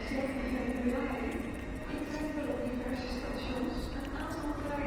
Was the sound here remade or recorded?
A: remade